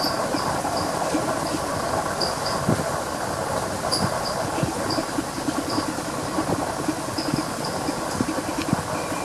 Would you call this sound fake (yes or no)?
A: no